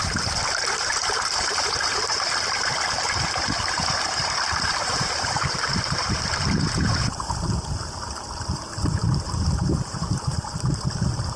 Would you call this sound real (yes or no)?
no